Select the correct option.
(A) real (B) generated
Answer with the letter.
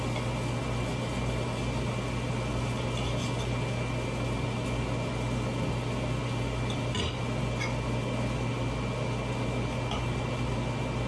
A